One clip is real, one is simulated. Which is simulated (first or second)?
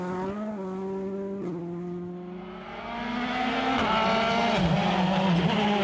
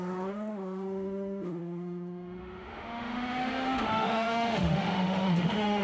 second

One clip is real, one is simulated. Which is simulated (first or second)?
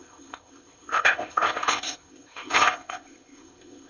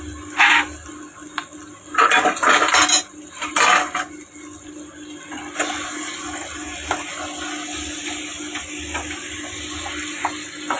first